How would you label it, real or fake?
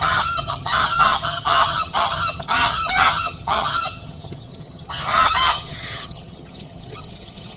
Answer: fake